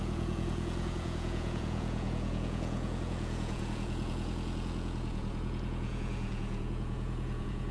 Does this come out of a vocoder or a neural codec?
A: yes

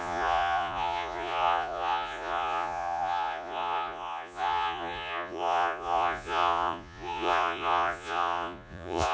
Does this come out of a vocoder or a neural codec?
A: yes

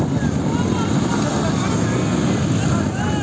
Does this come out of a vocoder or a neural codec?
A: no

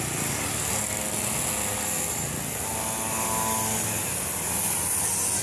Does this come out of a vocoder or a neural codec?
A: no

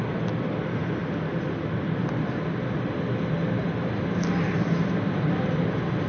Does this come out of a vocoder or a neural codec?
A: no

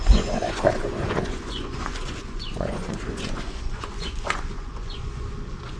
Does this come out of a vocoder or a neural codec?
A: yes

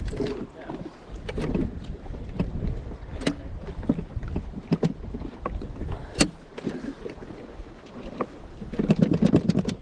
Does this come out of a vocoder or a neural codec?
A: no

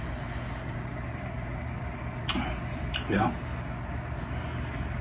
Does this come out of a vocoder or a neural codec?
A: no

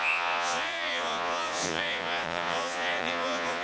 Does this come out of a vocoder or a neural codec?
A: yes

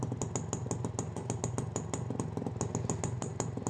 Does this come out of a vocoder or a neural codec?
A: no